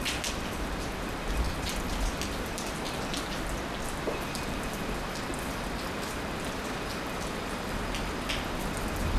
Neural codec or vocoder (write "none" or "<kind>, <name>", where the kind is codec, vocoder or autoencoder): none